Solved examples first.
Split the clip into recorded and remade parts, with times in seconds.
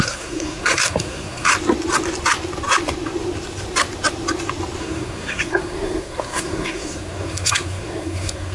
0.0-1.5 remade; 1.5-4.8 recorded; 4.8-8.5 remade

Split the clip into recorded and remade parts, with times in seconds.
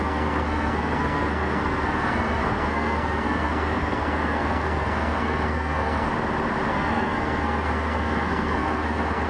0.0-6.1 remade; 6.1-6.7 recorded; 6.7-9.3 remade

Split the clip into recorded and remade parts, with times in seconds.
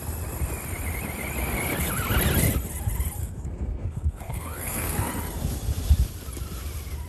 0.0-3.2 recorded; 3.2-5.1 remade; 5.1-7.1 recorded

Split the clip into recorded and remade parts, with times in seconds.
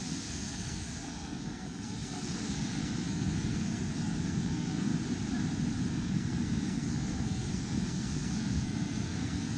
0.0-4.9 remade; 4.9-5.9 recorded; 5.9-9.6 remade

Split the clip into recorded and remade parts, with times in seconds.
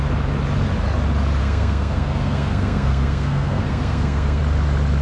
0.0-1.4 recorded; 1.4-4.4 remade; 4.4-5.0 recorded